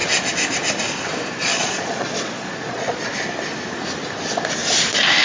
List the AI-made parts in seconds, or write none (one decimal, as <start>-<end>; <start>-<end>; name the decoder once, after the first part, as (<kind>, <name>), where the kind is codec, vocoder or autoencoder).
1.4-3.0 (vocoder, Vocos)